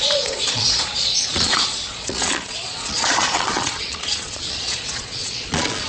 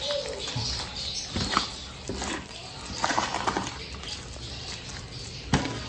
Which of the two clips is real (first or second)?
second